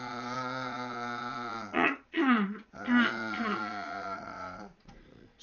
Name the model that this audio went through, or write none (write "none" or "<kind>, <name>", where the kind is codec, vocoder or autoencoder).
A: vocoder, Vocos